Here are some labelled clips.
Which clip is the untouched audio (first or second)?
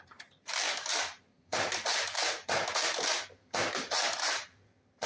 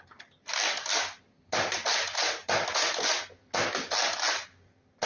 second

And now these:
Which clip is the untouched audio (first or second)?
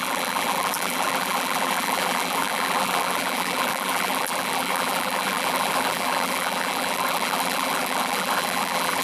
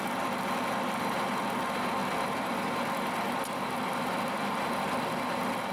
second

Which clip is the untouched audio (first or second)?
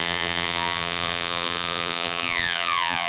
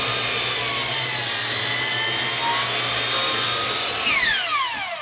second